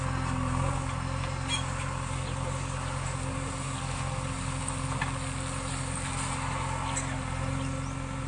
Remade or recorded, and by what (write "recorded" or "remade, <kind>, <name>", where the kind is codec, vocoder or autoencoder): recorded